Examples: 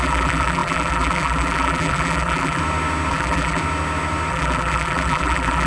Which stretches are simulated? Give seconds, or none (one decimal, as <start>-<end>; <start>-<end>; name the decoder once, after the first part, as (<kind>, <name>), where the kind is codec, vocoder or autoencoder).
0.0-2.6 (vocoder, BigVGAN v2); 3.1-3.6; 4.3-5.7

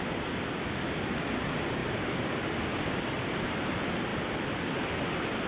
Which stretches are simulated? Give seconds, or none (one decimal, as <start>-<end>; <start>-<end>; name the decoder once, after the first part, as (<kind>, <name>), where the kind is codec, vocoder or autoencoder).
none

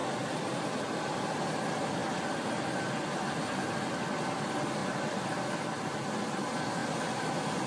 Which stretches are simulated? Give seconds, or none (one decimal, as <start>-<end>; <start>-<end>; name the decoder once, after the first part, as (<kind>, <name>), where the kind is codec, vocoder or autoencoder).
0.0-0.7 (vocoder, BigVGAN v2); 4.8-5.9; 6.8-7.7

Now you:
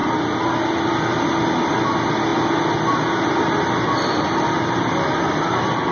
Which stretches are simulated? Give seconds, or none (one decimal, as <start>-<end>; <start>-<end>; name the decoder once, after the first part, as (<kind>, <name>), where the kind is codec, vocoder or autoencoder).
none